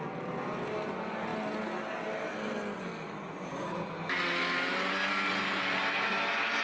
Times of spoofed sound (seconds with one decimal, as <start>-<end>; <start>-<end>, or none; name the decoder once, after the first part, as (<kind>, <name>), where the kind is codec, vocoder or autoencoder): none